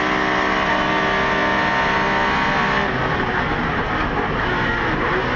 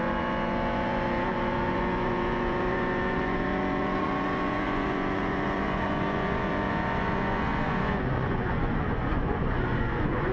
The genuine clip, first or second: first